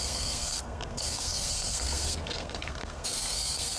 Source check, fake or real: fake